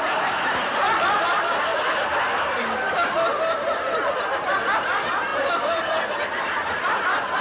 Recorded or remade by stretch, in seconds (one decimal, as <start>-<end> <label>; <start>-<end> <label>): 0.0-7.4 recorded